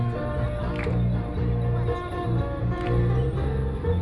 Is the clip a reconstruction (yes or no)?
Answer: no